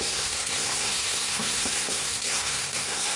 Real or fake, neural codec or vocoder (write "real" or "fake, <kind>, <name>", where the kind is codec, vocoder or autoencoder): fake, codec, SNAC